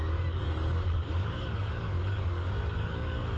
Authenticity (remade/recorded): remade